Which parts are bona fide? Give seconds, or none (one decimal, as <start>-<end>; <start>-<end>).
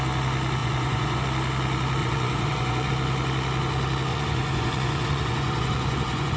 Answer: 0.0-0.6; 1.2-2.0; 2.9-4.1